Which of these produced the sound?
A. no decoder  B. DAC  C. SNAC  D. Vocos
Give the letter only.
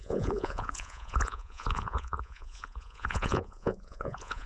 D